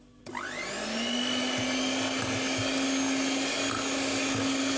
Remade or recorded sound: recorded